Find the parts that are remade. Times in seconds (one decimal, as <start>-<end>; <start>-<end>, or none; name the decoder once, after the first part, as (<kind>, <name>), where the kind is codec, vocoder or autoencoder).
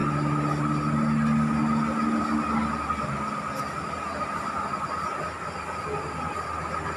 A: none